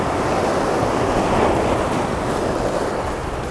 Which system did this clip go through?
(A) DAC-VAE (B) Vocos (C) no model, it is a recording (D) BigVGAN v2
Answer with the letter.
C